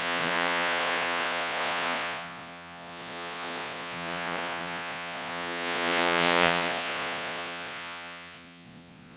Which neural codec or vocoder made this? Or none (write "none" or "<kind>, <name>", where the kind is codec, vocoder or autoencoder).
vocoder, Vocos